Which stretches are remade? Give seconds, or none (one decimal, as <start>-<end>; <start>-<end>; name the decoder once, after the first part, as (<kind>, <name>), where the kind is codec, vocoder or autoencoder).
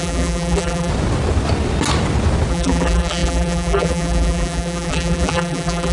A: 0.0-0.9 (vocoder, BigVGAN v2); 2.5-5.9